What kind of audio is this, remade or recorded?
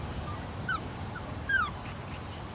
recorded